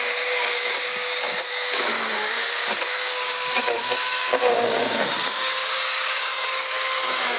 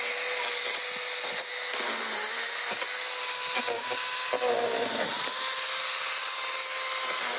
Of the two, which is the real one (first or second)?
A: second